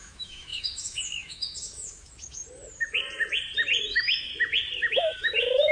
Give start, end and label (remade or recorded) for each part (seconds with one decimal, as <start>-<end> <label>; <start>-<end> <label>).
0.0-2.4 remade; 2.4-3.8 recorded; 3.8-4.3 remade; 4.3-4.9 recorded; 4.9-5.7 remade